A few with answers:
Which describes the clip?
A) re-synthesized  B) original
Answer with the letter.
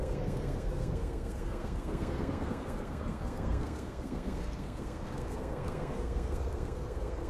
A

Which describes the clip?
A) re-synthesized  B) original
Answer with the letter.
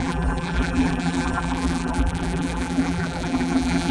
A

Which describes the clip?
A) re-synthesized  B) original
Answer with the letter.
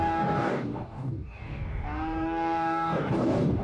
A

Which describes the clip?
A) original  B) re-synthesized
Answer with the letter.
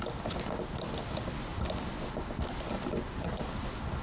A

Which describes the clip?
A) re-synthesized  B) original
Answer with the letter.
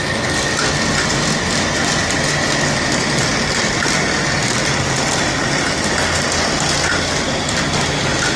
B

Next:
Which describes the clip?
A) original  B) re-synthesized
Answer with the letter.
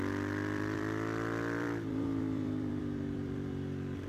B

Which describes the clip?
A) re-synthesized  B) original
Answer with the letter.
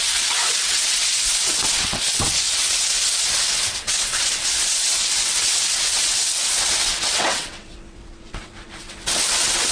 A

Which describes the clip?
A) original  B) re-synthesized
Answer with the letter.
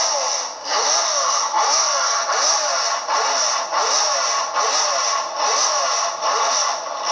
A